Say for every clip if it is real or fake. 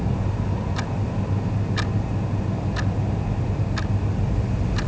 real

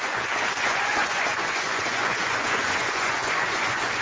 fake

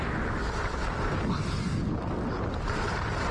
real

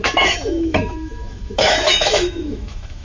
fake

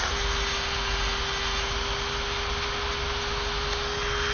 real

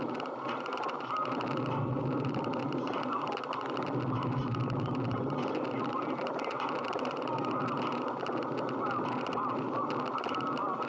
real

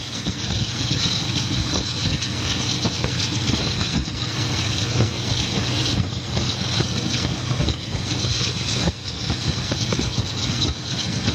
fake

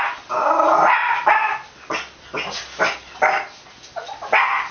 real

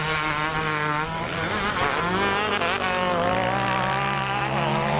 real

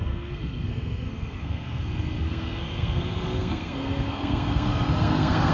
fake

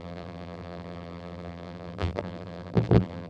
fake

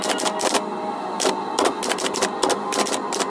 real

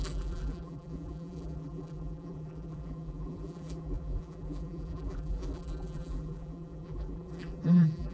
fake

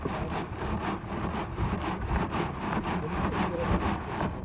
real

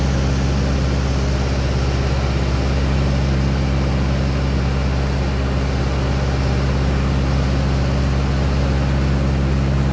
real